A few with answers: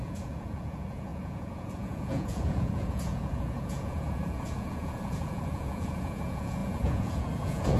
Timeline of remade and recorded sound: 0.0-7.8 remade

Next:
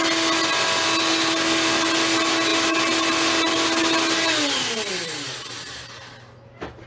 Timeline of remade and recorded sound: 0.0-6.9 recorded

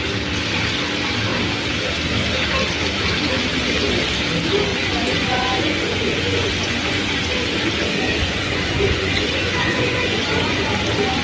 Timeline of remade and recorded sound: 0.0-4.7 recorded; 4.7-7.3 remade; 7.3-8.2 recorded; 8.2-10.7 remade; 10.7-11.2 recorded